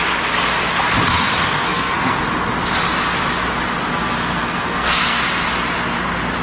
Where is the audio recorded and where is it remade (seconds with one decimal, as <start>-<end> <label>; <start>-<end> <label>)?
0.0-1.3 recorded; 1.3-2.2 remade; 2.2-3.9 recorded; 3.9-5.2 remade; 5.2-6.4 recorded